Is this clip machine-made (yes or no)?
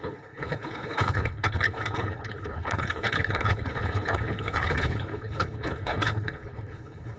yes